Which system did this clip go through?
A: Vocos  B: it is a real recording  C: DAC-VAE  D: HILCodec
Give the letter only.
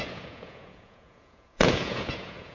A